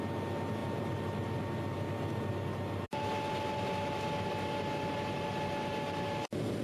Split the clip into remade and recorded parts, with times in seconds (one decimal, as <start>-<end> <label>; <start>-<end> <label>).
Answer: 0.0-6.6 recorded